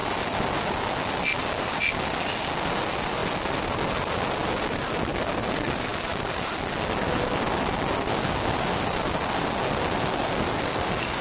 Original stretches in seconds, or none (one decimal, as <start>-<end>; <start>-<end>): 0.0-11.2